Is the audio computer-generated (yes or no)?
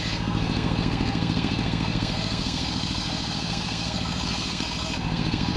yes